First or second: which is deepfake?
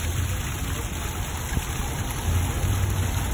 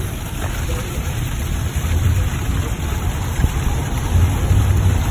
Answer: second